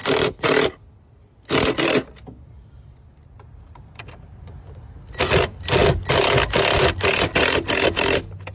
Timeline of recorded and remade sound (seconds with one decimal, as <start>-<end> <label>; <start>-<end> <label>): 0.0-8.5 recorded

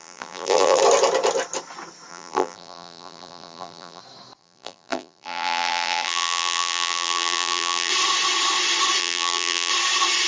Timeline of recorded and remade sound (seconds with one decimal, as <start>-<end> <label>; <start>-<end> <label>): 0.0-0.8 remade; 0.8-2.1 recorded; 2.1-4.0 remade; 4.0-4.4 recorded; 4.4-7.9 remade; 7.9-9.0 recorded; 9.0-9.7 remade; 9.7-10.3 recorded

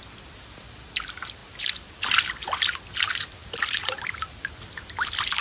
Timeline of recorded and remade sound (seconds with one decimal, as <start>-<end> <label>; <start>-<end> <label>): 0.0-5.4 recorded

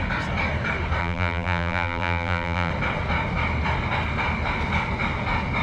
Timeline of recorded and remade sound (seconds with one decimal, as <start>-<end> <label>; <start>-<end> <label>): 0.0-1.0 recorded; 1.0-2.7 remade; 2.7-5.6 recorded

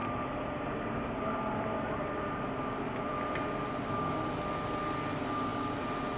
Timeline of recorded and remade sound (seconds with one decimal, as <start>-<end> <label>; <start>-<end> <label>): 0.0-3.6 remade; 3.6-5.5 recorded; 5.5-6.2 remade

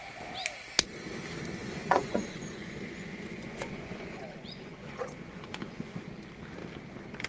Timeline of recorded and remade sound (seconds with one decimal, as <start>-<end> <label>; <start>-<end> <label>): 0.0-1.6 recorded; 1.6-6.0 remade; 6.0-7.3 recorded

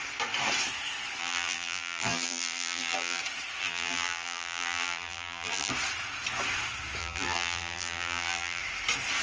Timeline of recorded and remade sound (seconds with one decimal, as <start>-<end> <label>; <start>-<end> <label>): 0.0-1.2 recorded; 1.2-3.2 remade; 3.2-3.6 recorded; 3.6-5.7 remade; 5.7-7.0 recorded; 7.0-8.6 remade; 8.6-9.2 recorded